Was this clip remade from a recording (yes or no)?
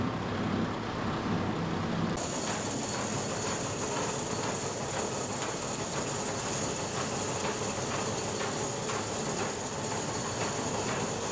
no